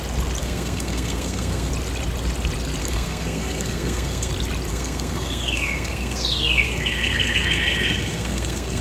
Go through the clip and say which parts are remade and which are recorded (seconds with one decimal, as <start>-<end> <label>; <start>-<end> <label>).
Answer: 0.0-0.4 recorded; 0.4-1.7 remade; 1.7-2.8 recorded; 2.8-4.3 remade; 4.3-4.7 recorded; 4.7-8.8 remade